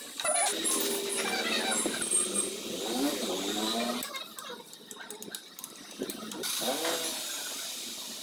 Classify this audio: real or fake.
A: real